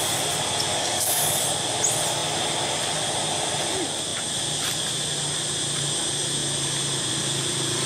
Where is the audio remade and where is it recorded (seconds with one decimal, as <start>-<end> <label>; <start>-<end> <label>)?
0.0-0.7 recorded; 0.7-1.4 remade; 1.4-7.9 recorded